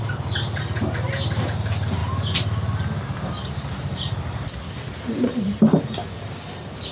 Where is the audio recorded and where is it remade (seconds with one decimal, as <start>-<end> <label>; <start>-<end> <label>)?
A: 0.0-6.9 recorded